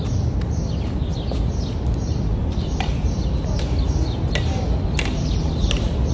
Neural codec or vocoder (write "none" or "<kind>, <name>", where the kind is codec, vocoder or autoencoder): none